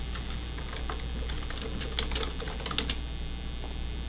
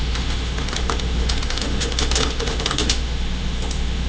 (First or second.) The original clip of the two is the first